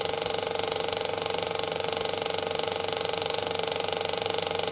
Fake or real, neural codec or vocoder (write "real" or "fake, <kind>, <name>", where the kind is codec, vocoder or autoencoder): fake, vocoder, BigVGAN v2